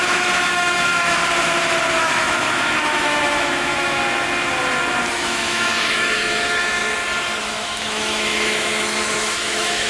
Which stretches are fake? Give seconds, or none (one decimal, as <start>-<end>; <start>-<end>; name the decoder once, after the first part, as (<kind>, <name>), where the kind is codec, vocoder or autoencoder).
0.0-1.2 (autoencoder, DAC-VAE); 2.0-4.0; 5.1-6.8; 7.4-9.9